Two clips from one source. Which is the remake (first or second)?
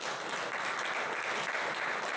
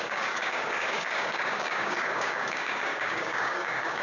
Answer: second